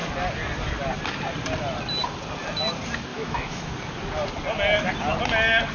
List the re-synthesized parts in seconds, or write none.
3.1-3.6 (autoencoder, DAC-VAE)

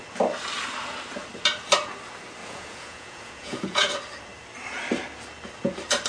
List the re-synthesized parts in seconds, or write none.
2.4-3.9 (vocoder, Vocos)

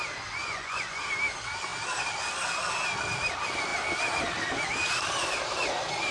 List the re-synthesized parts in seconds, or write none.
0.4-1.0 (vocoder, Vocos)

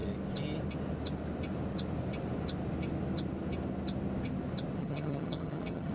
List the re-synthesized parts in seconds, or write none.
4.8-5.9 (vocoder, HiFi-GAN)

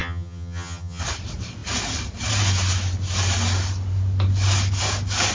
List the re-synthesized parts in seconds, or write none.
0.0-1.0 (vocoder, HiFi-GAN)

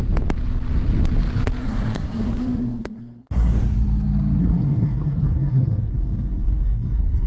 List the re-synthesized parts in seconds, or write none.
1.6-3.5 (codec, SNAC); 4.4-7.3

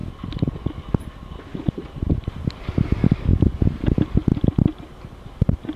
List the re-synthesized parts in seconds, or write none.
3.0-3.6 (codec, DAC)

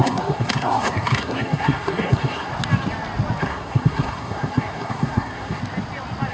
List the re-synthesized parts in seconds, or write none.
0.0-2.5 (codec, SNAC); 3.4-5.6